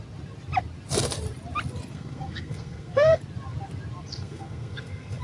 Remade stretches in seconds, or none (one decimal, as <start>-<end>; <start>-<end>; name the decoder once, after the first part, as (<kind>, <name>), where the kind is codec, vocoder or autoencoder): 1.9-3.2 (codec, SNAC); 4.1-5.2